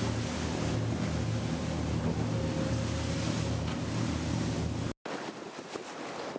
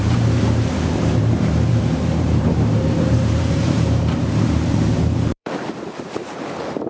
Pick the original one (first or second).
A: first